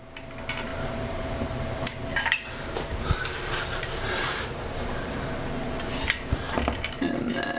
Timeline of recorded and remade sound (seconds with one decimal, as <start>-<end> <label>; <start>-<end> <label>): 0.0-0.7 recorded; 0.7-5.3 remade; 5.3-7.6 recorded